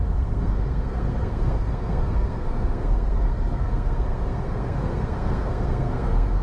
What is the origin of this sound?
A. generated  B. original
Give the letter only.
A